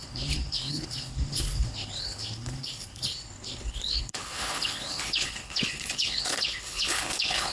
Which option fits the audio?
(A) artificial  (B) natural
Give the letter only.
A